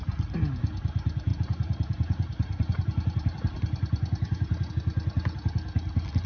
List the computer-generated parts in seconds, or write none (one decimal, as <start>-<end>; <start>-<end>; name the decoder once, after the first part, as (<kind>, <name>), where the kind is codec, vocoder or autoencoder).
1.3-4.7 (vocoder, BigVGAN v2)